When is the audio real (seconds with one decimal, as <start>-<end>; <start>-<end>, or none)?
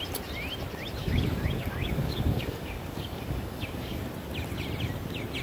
0.0-1.0; 4.0-5.4